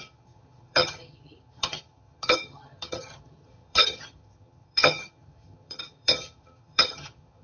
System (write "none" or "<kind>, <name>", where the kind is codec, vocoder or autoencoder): vocoder, HiFi-GAN